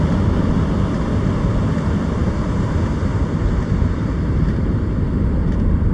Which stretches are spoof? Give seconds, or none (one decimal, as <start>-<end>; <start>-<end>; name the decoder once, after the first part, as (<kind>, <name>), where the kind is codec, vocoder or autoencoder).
2.2-5.9 (vocoder, BigVGAN v2)